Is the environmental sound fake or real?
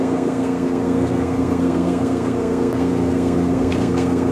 fake